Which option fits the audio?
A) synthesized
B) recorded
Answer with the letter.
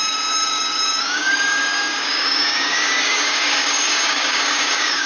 A